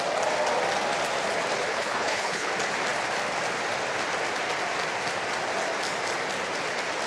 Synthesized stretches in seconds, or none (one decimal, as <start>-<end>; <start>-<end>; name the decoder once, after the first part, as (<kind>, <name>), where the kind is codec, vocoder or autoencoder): 1.7-2.5 (codec, HILCodec)

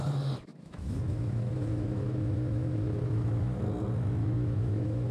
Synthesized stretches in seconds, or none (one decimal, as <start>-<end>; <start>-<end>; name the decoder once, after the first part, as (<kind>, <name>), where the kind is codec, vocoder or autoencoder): 0.5-3.6 (autoencoder, DAC-VAE); 4.2-5.1